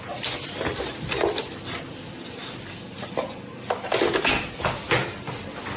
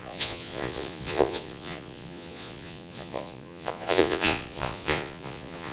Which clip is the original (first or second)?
first